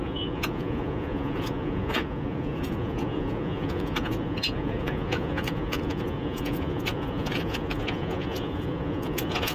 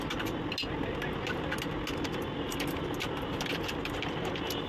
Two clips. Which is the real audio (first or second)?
second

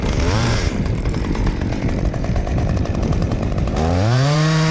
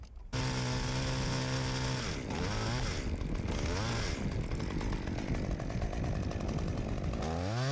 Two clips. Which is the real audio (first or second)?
second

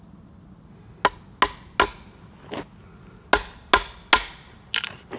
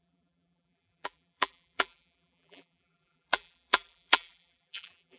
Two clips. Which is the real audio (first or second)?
first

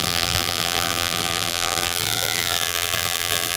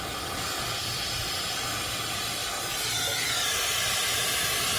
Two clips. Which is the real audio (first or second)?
second